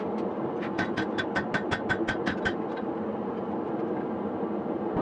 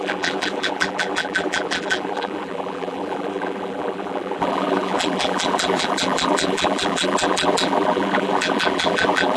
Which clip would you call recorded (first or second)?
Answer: first